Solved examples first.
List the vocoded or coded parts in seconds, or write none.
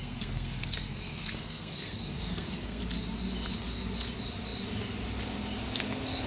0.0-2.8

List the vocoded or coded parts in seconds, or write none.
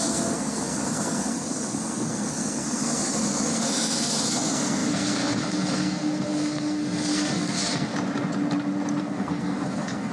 0.0-7.9; 9.0-10.1